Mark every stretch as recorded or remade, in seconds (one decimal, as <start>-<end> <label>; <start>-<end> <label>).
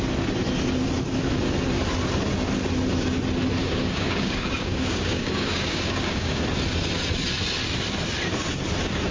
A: 0.0-3.6 recorded; 3.6-6.4 remade; 6.4-9.1 recorded